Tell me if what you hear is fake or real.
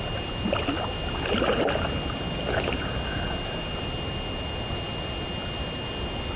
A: real